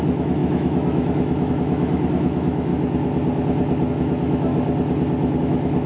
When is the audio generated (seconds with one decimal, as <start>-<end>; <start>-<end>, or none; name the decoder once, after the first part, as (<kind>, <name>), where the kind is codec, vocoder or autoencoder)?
0.0-2.7 (autoencoder, DAC-VAE); 3.9-4.5; 5.4-5.9